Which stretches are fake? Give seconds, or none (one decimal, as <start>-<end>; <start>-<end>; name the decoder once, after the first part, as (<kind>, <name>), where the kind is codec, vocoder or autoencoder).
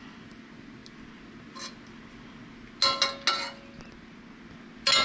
none